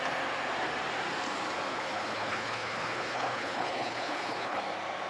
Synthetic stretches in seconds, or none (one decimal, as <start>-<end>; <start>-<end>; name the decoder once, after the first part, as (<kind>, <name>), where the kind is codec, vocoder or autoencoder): 1.7-4.6 (codec, HILCodec)

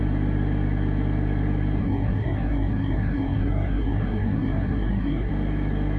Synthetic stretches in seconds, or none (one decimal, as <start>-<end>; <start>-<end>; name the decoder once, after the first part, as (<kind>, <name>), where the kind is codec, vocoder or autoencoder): 1.8-5.3 (codec, SNAC)

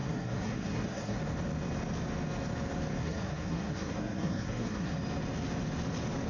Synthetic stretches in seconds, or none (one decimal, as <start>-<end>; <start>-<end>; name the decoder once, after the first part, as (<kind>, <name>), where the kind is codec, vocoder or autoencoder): 0.0-1.2 (codec, SNAC); 3.0-4.9

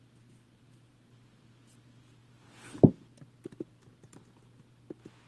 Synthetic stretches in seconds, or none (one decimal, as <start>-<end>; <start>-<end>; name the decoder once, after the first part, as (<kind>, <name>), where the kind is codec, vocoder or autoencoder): none

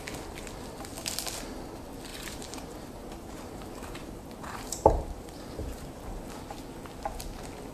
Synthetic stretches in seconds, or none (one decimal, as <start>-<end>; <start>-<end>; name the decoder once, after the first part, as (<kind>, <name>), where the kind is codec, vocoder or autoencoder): 2.1-6.4 (vocoder, BigVGAN v2)

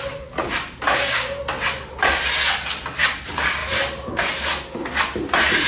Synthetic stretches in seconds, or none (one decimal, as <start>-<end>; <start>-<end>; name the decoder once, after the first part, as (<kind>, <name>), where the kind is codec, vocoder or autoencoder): 0.9-1.4 (codec, DAC)

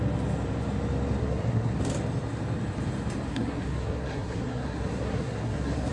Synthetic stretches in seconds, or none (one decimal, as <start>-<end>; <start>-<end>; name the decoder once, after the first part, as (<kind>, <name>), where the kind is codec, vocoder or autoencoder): 1.2-1.8 (codec, SNAC); 3.3-5.9